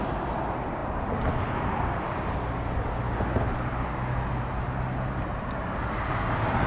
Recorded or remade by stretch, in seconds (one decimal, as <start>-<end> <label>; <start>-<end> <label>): 0.0-6.7 recorded